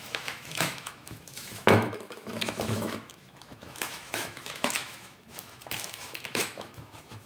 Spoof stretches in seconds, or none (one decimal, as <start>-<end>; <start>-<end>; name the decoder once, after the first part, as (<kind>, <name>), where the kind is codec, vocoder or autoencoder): 0.0-7.3 (autoencoder, DAC-VAE)